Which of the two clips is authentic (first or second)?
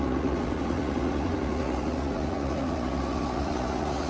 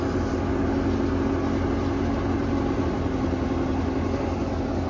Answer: second